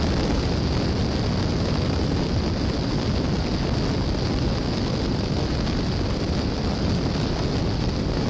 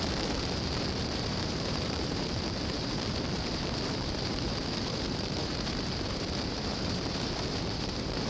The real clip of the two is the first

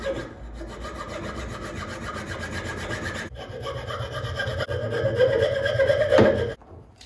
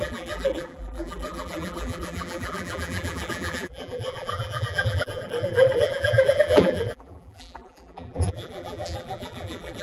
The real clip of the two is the first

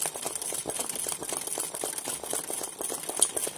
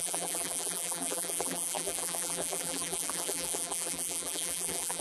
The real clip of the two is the first